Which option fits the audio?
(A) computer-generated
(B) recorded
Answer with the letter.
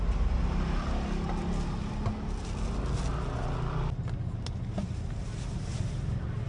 B